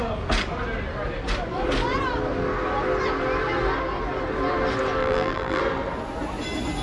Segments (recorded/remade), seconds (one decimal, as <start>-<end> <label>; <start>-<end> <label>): 0.0-5.0 recorded; 5.0-5.6 remade; 5.6-6.8 recorded